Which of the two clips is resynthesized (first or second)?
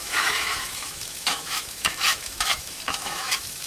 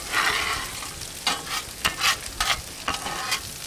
first